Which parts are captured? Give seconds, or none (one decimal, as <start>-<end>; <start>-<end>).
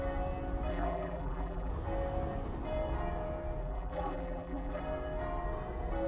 0.0-0.7; 1.7-3.6; 4.8-6.1